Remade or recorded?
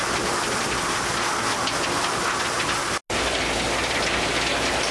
recorded